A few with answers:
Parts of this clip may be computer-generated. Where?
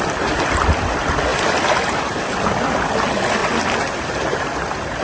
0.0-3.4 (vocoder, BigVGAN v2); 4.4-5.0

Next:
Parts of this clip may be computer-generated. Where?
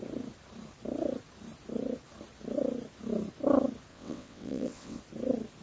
3.9-5.0 (vocoder, WaveNeXt)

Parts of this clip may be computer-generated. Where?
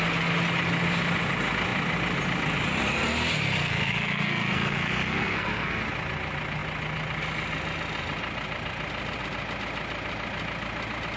3.6-5.8 (codec, SNAC)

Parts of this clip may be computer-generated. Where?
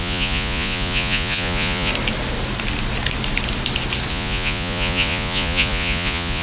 0.0-1.9 (vocoder, Vocos); 4.1-6.4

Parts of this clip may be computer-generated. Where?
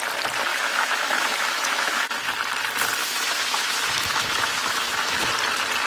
0.5-2.3 (autoencoder, DAC-VAE); 3.0-5.3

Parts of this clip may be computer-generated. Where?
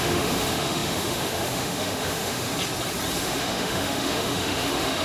0.0-2.5 (autoencoder, DAC-VAE); 3.2-5.0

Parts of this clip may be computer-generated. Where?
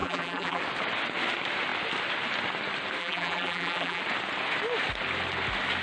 0.0-0.6 (vocoder, BigVGAN v2); 3.0-4.0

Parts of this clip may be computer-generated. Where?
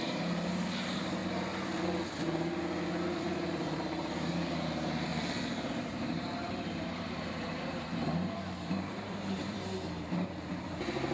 0.0-1.2 (vocoder, BigVGAN v2); 3.2-5.1; 5.7-11.1